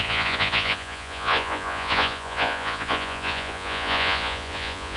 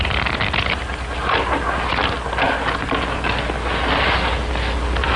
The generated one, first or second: first